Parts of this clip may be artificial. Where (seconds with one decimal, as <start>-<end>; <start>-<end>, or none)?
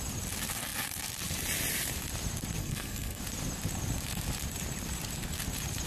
2.6-3.2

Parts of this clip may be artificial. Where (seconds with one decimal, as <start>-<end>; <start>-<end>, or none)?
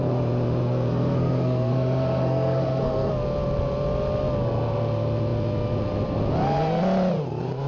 0.6-3.1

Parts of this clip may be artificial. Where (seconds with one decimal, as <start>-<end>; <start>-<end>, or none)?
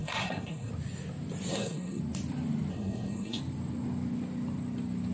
0.0-0.7; 1.5-2.0; 2.7-3.4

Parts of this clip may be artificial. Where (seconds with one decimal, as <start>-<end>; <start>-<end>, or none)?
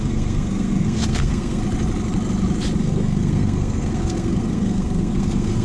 0.0-1.6; 2.8-5.6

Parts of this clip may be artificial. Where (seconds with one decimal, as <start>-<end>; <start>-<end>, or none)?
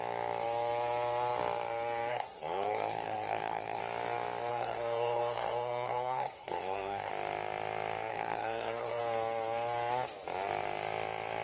2.1-3.8; 4.5-7.1; 8.1-9.0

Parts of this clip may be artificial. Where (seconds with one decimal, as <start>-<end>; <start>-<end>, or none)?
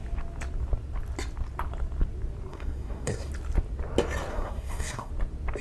2.5-3.3; 4.3-5.1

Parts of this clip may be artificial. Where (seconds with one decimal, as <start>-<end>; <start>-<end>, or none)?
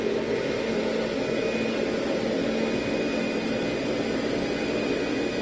none